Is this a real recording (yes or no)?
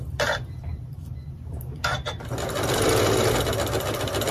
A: yes